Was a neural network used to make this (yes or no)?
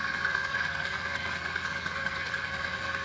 yes